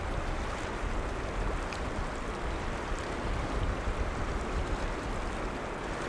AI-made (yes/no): no